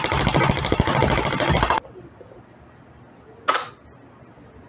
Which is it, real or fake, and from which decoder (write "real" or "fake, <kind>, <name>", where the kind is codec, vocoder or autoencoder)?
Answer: real